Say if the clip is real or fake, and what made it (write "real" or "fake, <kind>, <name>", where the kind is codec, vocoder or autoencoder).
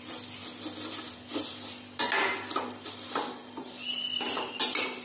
real